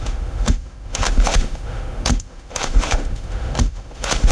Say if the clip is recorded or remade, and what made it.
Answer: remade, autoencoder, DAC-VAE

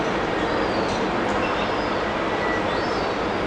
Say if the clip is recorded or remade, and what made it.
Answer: remade, vocoder, BigVGAN v2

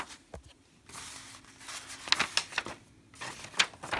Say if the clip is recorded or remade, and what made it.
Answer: recorded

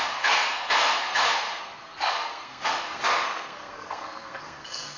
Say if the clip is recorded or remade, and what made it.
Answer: remade, codec, SNAC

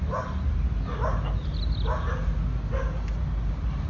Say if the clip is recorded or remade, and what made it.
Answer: recorded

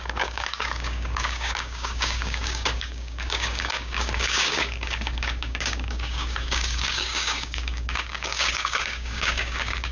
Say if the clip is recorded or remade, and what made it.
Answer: remade, codec, DAC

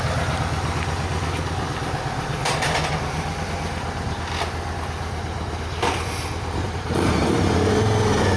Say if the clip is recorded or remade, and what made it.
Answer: recorded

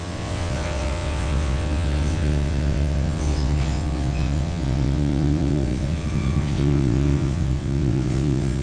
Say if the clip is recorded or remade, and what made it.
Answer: remade, vocoder, WaveNeXt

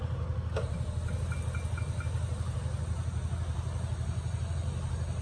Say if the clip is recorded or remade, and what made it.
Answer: recorded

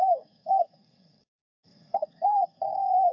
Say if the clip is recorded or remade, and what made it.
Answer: remade, codec, SNAC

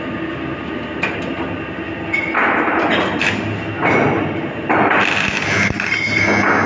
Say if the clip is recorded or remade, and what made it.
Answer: recorded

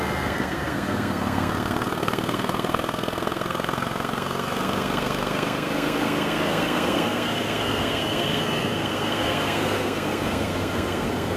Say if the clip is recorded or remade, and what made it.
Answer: remade, codec, SNAC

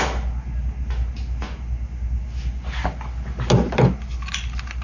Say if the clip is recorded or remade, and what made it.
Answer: recorded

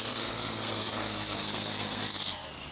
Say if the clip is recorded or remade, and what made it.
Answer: remade, codec, SNAC